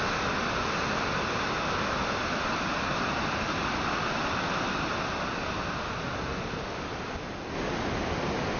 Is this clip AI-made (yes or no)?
no